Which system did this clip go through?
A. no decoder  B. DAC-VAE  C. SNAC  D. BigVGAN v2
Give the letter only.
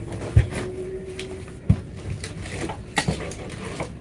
A